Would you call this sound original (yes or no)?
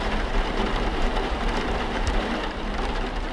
no